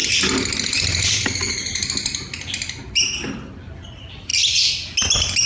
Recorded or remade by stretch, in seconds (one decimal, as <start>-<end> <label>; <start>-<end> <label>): 0.0-5.5 recorded